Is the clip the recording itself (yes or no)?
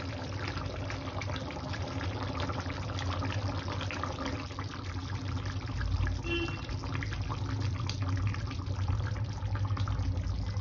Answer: yes